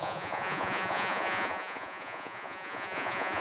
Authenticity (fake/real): fake